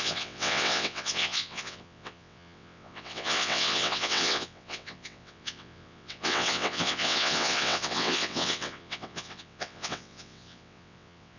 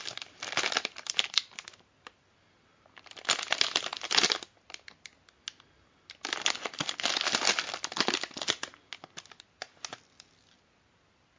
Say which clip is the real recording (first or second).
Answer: second